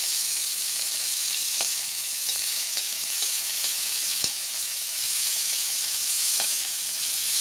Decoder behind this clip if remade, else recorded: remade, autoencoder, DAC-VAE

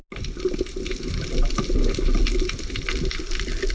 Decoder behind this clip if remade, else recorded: recorded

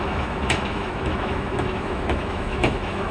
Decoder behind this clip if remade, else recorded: remade, autoencoder, DAC-VAE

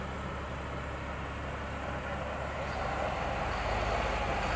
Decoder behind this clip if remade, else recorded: recorded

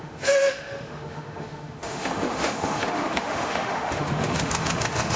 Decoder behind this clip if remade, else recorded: remade, autoencoder, DAC-VAE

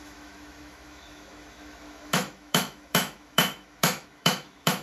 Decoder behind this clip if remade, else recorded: remade, autoencoder, DAC-VAE